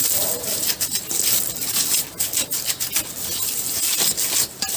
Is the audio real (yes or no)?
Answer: yes